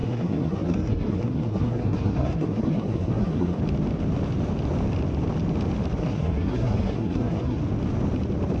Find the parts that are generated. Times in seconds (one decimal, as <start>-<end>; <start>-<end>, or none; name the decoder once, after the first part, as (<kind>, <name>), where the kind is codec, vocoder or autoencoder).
0.0-3.6 (codec, SNAC); 6.0-7.6

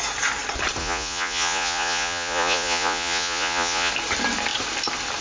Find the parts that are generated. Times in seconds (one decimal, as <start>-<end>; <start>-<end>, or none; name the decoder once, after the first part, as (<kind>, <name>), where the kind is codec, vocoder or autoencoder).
0.8-3.9 (vocoder, Vocos)

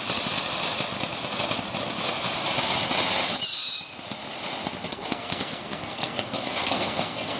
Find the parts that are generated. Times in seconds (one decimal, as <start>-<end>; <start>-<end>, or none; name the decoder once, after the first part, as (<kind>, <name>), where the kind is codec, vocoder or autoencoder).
4.9-7.4 (codec, SNAC)

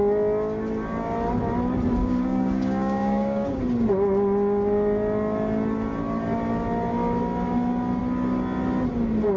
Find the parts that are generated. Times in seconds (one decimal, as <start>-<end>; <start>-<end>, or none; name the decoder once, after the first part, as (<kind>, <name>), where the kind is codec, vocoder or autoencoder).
2.0-3.6 (codec, DAC)

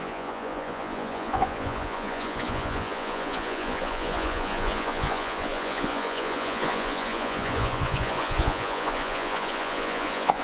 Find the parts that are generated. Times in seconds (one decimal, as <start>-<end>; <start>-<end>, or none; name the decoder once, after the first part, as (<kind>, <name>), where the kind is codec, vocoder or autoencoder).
0.0-10.4 (vocoder, Vocos)

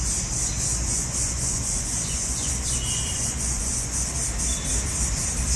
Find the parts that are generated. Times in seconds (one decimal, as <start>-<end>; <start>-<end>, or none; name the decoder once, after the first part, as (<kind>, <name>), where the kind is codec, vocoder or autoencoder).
0.7-4.1 (vocoder, Vocos)

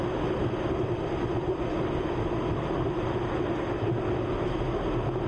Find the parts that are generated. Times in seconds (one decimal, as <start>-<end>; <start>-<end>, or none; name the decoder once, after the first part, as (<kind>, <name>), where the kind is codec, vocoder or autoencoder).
none